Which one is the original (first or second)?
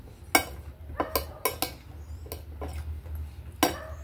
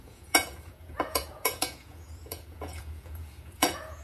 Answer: first